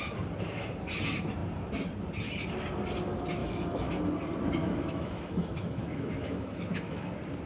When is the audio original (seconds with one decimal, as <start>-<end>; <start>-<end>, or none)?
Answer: 0.0-3.4; 4.0-4.6; 7.1-7.5